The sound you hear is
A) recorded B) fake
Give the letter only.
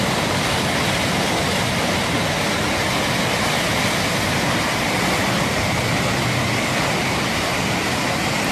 A